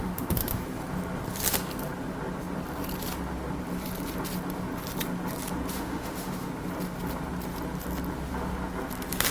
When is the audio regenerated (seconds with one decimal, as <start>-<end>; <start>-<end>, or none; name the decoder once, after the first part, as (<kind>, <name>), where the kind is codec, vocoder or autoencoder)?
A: 0.0-0.6 (autoencoder, DAC-VAE); 5.7-6.5